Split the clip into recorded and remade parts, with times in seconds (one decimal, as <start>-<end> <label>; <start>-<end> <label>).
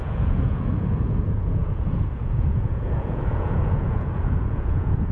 0.0-5.1 remade